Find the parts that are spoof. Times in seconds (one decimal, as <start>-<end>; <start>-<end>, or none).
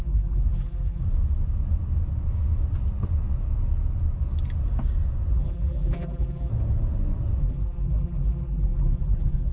0.0-1.0; 5.3-6.5; 7.4-9.5